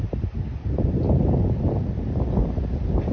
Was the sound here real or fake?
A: real